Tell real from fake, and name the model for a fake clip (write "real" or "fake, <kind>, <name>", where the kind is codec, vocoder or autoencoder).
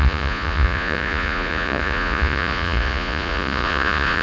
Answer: fake, vocoder, Vocos